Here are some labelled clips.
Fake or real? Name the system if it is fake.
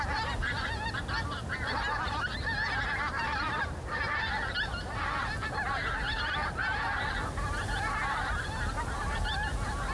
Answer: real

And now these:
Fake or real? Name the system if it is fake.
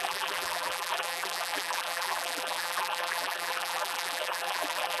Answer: fake, vocoder, BigVGAN v2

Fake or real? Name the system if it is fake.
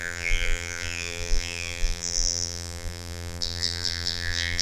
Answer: fake, vocoder, BigVGAN v2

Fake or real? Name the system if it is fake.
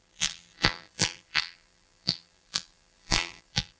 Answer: fake, vocoder, BigVGAN v2